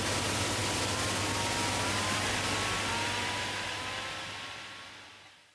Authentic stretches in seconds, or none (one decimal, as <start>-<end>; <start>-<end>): 0.0-5.5